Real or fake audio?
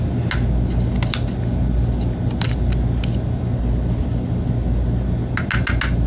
real